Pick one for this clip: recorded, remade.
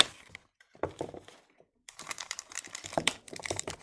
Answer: remade